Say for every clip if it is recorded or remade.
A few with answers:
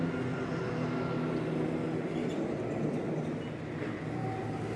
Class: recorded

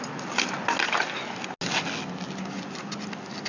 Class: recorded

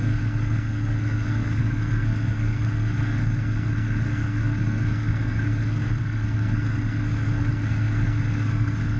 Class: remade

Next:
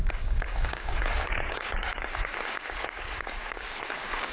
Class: remade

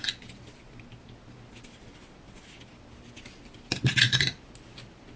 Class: recorded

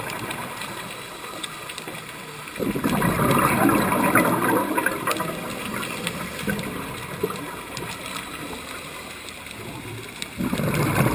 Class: recorded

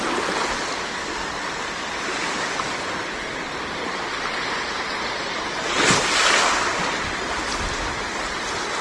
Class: recorded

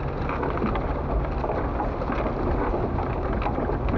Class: recorded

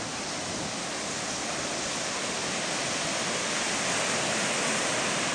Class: recorded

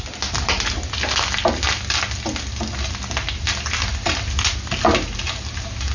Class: recorded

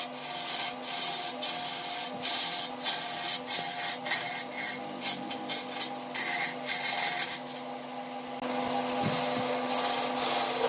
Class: recorded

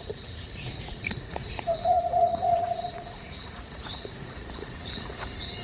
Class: remade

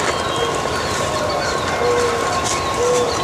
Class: recorded